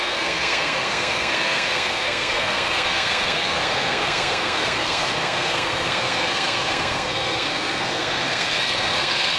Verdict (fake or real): fake